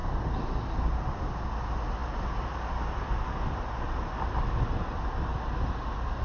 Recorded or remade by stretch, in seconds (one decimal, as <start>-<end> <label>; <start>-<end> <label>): 0.0-6.2 recorded